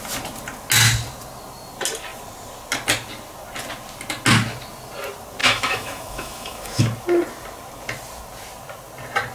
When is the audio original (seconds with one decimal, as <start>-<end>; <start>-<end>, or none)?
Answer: 0.0-5.4; 6.8-9.3